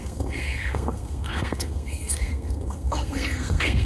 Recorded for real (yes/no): no